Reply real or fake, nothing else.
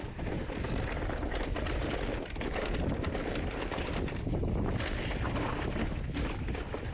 real